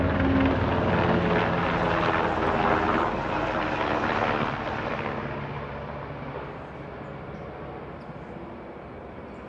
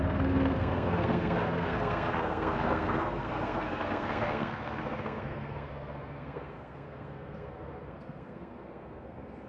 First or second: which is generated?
second